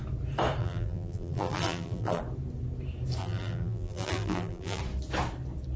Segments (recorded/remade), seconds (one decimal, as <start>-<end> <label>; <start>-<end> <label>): 0.0-0.6 recorded; 0.6-2.2 remade; 2.2-3.2 recorded; 3.2-4.8 remade; 4.8-5.8 recorded